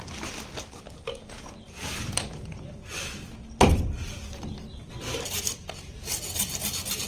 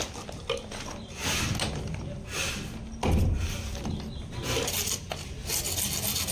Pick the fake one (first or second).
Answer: first